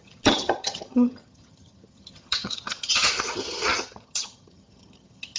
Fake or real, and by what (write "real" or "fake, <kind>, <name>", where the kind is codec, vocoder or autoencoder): fake, vocoder, HiFi-GAN